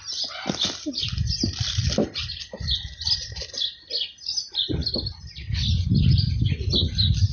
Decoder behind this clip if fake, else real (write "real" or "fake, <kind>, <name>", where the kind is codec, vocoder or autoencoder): real